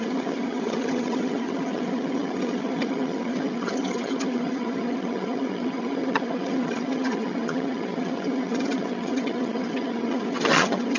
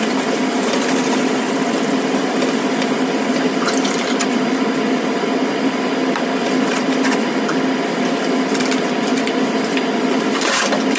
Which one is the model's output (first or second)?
first